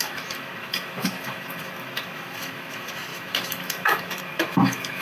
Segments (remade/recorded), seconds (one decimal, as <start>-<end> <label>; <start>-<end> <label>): 0.0-5.0 remade